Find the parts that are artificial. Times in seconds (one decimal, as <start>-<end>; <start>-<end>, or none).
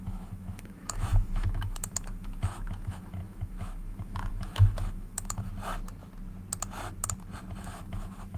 0.0-5.5; 7.6-8.4